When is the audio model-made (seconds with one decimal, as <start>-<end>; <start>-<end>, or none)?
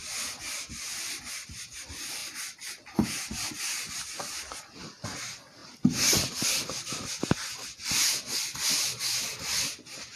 none